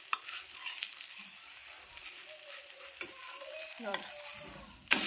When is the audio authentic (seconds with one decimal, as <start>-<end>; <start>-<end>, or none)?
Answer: none